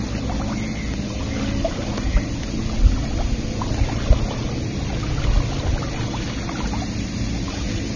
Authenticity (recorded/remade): recorded